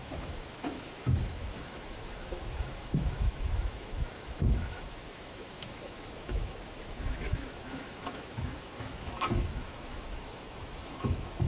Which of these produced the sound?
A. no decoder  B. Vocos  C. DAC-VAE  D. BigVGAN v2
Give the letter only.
C